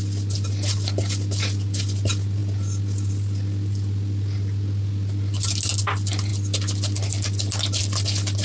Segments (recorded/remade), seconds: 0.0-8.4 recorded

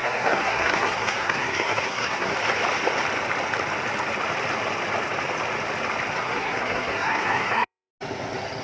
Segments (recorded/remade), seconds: 0.0-2.3 remade; 2.3-6.2 recorded; 6.2-7.9 remade; 7.9-8.6 recorded

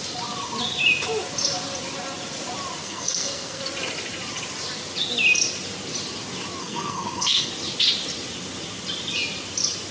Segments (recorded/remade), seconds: 0.0-2.8 recorded; 2.8-3.6 remade; 3.6-6.6 recorded; 6.6-7.5 remade; 7.5-9.9 recorded

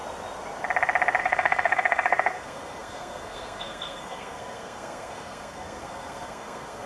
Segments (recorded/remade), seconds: 0.0-1.2 recorded; 1.2-6.9 remade

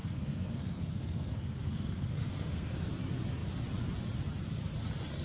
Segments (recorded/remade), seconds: 0.0-2.9 remade; 2.9-5.2 recorded

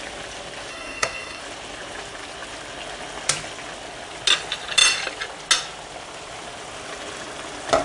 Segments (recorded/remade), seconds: 0.0-0.7 recorded; 0.7-1.4 remade; 1.4-7.8 recorded